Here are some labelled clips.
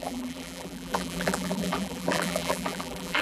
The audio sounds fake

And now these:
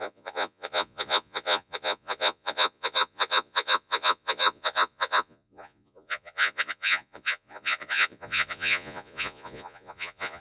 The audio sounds fake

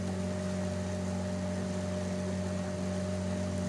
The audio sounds real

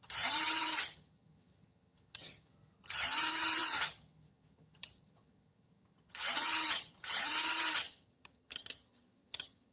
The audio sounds fake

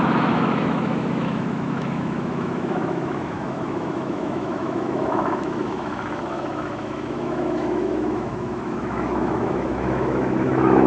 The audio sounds fake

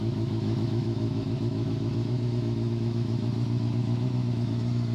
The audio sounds fake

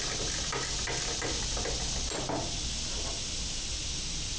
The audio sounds real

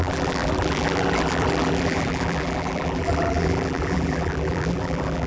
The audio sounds fake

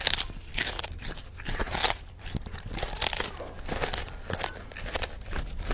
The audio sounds real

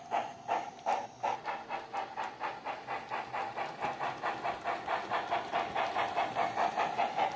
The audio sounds real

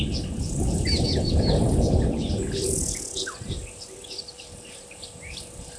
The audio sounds real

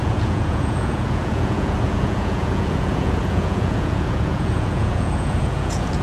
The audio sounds fake